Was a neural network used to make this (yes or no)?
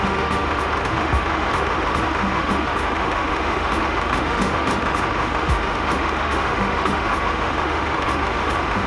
yes